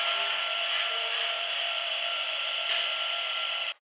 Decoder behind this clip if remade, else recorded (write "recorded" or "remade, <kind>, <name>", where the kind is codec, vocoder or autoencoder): recorded